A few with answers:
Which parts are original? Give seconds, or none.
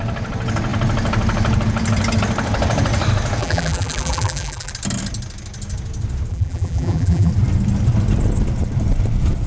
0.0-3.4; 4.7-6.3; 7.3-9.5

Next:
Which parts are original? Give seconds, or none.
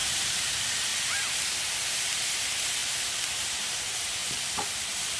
0.5-2.8; 3.8-4.2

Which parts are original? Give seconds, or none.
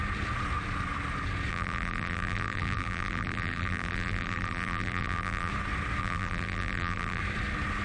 0.0-1.5; 5.5-6.0; 7.2-7.8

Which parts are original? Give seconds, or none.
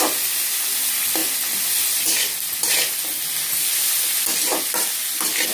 0.0-5.5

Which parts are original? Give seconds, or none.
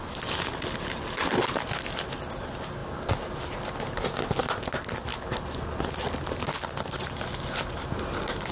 0.0-8.5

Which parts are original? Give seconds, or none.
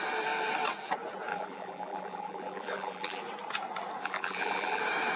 0.0-1.3; 3.2-4.0; 4.8-5.2